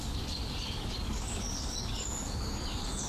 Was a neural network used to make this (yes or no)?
yes